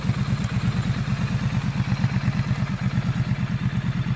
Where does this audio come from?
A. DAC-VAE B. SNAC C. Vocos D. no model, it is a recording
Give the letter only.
D